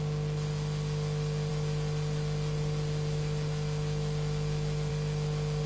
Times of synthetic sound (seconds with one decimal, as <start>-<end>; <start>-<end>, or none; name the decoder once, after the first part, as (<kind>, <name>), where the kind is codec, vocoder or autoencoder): none